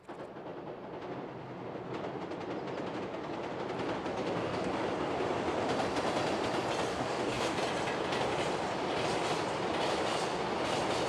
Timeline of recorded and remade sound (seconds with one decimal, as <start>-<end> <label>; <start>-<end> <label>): 0.0-4.1 recorded; 4.1-4.7 remade; 4.7-6.9 recorded; 6.9-7.6 remade; 7.6-11.1 recorded